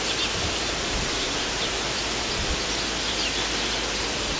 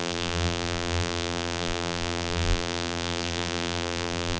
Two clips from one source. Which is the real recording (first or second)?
first